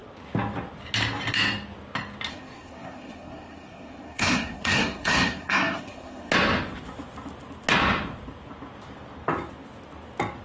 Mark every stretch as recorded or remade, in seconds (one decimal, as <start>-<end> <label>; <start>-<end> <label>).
0.0-2.3 recorded; 2.3-6.3 remade; 6.3-10.4 recorded